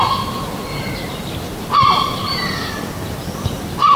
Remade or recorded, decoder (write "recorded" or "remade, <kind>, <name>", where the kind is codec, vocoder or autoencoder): recorded